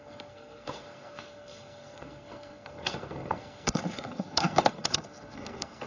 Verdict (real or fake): fake